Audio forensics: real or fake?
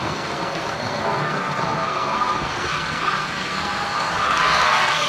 fake